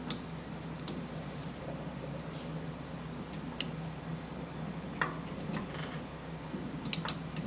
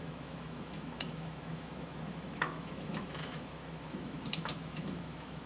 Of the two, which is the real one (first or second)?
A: first